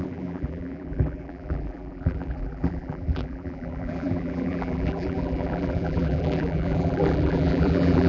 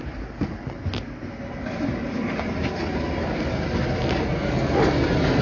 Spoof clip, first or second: first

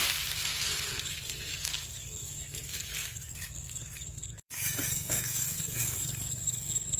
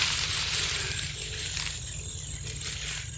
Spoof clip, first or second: first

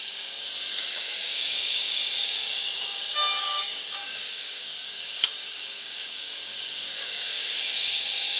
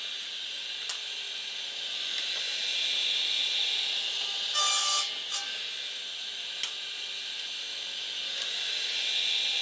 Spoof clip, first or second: first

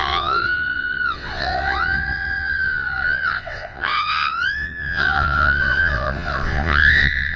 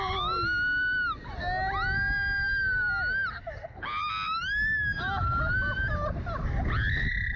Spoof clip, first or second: first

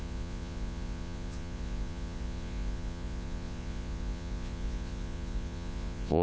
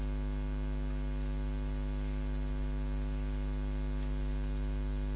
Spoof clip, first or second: first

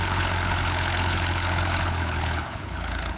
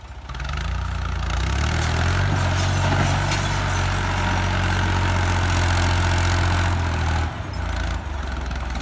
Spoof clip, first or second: first